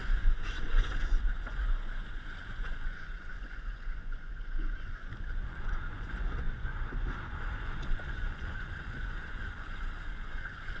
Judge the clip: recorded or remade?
remade